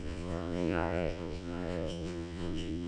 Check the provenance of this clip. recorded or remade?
remade